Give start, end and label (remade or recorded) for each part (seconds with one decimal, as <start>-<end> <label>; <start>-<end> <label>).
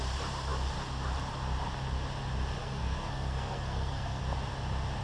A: 0.0-2.6 recorded; 2.6-4.2 remade; 4.2-5.0 recorded